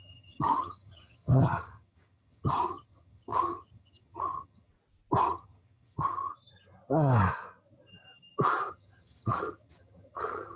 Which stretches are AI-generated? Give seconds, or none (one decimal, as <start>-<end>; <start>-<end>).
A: 0.0-4.7; 5.2-6.3; 8.7-10.6